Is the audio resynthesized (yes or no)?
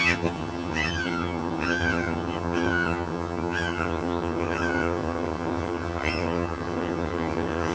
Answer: yes